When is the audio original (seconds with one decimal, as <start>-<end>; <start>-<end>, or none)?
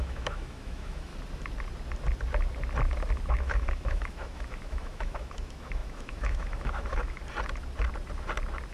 1.1-3.3; 7.2-8.7